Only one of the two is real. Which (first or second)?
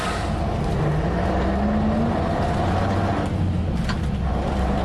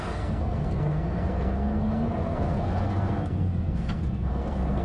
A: first